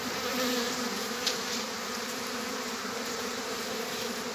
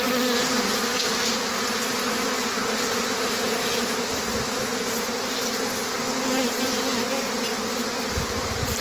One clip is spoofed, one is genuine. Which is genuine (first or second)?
second